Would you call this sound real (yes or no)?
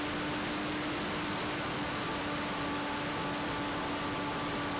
yes